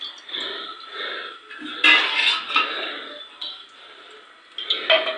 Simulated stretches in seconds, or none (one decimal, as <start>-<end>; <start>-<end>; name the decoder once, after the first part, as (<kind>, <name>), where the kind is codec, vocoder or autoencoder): none